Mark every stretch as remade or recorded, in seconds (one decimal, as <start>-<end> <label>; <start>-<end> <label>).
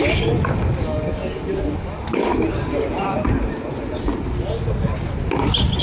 0.0-2.3 remade; 2.3-5.8 recorded